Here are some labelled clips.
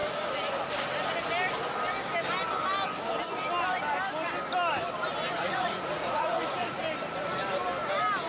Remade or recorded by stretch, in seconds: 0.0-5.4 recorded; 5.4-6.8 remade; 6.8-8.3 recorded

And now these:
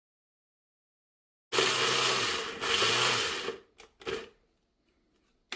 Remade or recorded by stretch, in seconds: 0.0-5.6 recorded

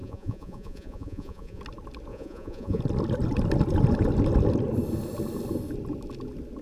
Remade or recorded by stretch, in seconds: 0.0-1.6 remade; 1.6-2.1 recorded; 2.1-2.8 remade; 2.8-6.6 recorded

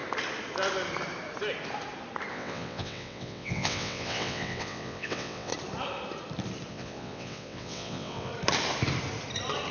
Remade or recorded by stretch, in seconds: 0.0-2.3 recorded; 2.3-5.5 remade; 5.5-6.7 recorded; 6.7-8.3 remade; 8.3-9.7 recorded